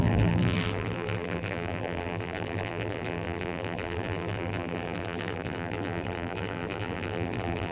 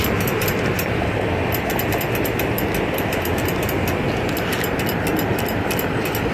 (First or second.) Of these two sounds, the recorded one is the second